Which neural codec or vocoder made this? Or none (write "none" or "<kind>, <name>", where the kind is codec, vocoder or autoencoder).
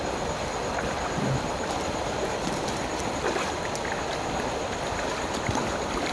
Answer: none